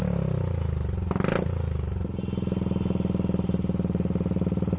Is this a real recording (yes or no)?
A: yes